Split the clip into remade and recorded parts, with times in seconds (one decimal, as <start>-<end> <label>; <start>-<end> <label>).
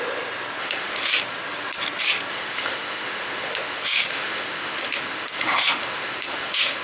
0.0-0.6 recorded; 0.6-1.1 remade; 1.1-2.3 recorded; 2.3-6.8 remade